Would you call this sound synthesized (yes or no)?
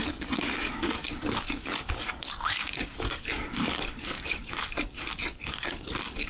yes